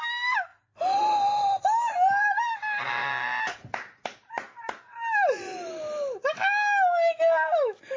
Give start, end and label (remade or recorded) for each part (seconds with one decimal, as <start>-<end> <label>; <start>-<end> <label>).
0.0-0.5 recorded; 0.5-2.6 remade; 2.6-3.0 recorded; 3.0-4.8 remade; 4.8-8.0 recorded